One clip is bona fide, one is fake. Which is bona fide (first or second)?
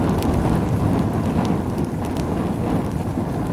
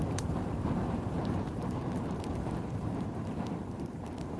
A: first